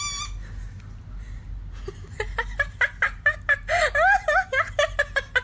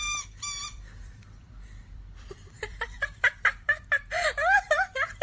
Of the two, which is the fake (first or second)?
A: second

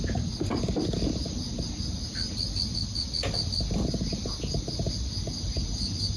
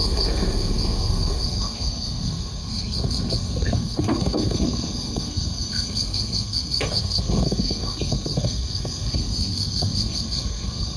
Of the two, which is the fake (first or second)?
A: second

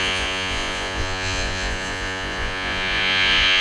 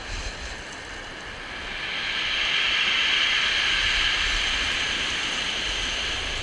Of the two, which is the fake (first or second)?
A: first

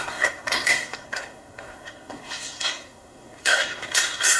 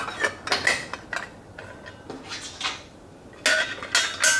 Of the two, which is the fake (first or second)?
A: first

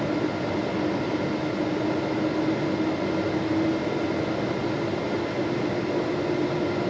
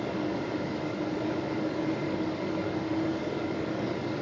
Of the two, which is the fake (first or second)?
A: second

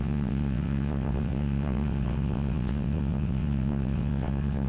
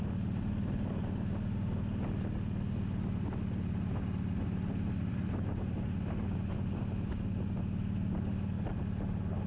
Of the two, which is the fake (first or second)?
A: first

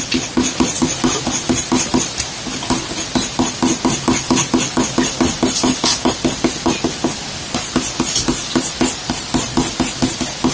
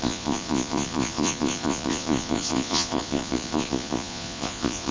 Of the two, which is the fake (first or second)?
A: second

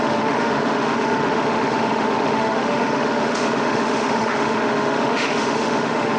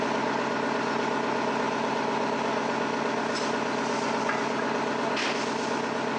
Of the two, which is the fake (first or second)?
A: first